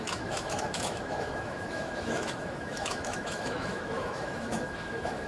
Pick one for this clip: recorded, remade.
remade